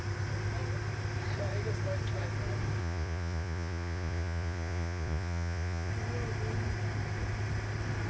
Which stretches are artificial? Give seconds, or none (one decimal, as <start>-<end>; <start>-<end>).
2.8-5.9